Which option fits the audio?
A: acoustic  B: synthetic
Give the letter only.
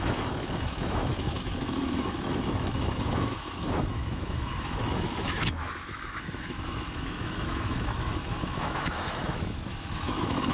B